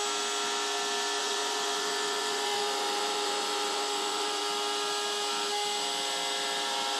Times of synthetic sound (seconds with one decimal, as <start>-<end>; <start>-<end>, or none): 1.2-4.4